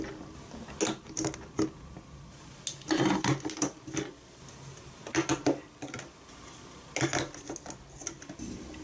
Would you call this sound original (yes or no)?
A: yes